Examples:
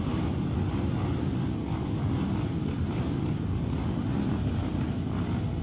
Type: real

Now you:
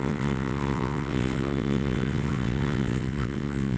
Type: fake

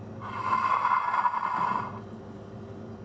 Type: real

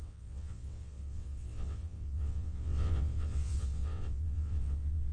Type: fake